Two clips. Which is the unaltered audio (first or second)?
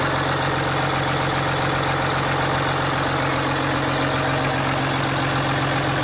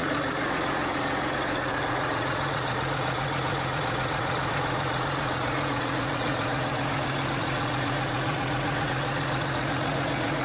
first